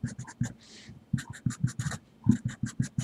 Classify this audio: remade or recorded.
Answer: remade